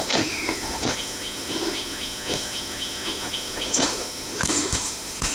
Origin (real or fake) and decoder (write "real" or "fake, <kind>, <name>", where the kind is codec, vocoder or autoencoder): fake, autoencoder, DAC-VAE